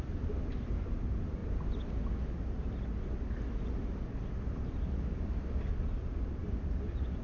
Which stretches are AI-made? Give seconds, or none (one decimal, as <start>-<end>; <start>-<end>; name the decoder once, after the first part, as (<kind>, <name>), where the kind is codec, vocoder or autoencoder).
none